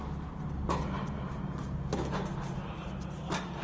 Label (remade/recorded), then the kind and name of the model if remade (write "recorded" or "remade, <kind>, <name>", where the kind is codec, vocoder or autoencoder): recorded